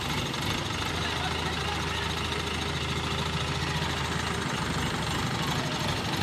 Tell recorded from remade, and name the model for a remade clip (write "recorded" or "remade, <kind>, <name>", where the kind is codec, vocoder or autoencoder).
recorded